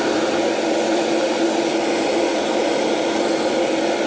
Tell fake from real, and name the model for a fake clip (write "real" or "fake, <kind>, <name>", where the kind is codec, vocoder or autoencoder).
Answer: real